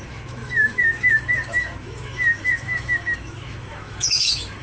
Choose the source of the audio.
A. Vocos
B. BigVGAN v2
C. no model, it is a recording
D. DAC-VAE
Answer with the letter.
D